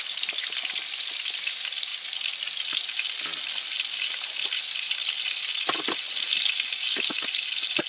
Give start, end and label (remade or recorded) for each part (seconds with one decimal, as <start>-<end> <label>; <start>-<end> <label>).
0.0-7.9 recorded

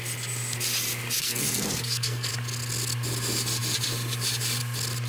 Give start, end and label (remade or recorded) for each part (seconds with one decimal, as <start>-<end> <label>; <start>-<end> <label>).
0.0-1.2 recorded; 1.2-2.3 remade; 2.3-5.1 recorded

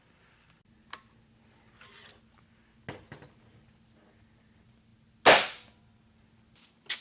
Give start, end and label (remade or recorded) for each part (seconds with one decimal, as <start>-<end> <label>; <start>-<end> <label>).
0.0-7.0 recorded

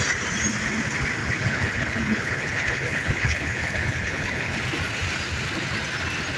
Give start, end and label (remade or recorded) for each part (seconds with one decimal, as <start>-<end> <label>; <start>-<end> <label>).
0.0-1.2 recorded; 1.2-4.6 remade; 4.6-6.4 recorded

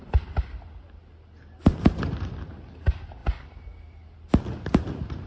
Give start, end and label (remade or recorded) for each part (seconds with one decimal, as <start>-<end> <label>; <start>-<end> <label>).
0.0-5.3 recorded

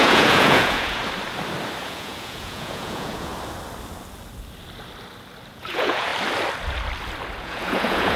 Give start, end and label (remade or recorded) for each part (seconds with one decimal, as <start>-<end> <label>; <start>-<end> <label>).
0.0-1.0 remade; 1.0-1.8 recorded; 1.8-3.3 remade; 3.3-5.5 recorded; 5.5-6.1 remade; 6.1-7.4 recorded; 7.4-8.2 remade

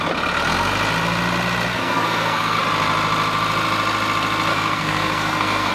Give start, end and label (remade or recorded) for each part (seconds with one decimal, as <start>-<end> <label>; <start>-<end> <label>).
0.0-1.7 recorded; 1.7-2.6 remade; 2.6-4.5 recorded; 4.5-5.7 remade

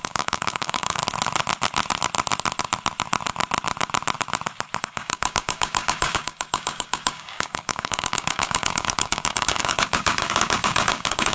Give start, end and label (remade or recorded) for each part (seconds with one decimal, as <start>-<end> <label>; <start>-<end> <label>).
0.0-1.0 remade; 1.0-4.8 recorded; 4.8-11.3 remade